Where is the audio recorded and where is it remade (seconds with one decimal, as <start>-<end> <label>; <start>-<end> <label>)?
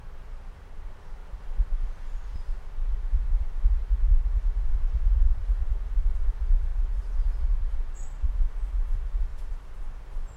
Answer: 0.0-1.2 recorded; 1.2-2.3 remade; 2.3-4.7 recorded; 4.7-5.6 remade; 5.6-9.3 recorded; 9.3-9.9 remade; 9.9-10.4 recorded